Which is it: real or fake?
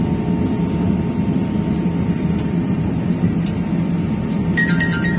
real